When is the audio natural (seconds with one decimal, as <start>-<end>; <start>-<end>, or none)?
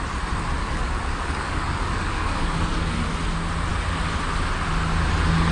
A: 0.0-0.6; 3.1-5.5